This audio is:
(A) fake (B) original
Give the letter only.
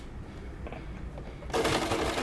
B